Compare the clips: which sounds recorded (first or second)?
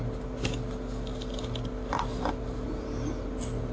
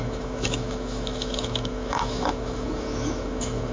first